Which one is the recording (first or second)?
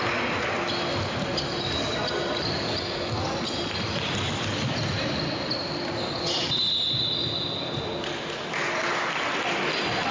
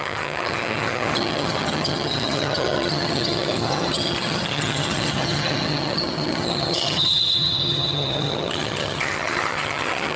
first